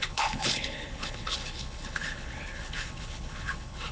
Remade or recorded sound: remade